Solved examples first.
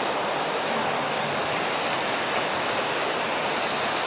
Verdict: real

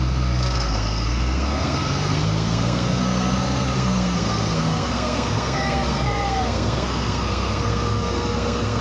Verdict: fake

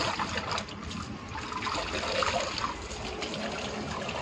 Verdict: real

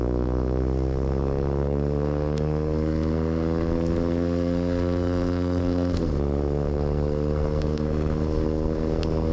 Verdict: fake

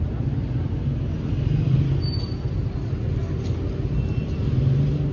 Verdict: real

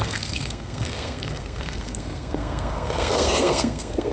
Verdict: fake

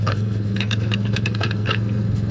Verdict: fake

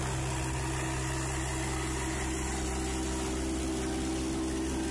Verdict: real